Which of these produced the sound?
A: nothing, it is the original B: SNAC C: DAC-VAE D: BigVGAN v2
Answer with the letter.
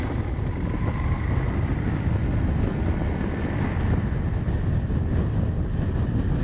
A